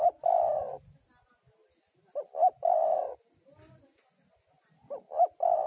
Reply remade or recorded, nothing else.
recorded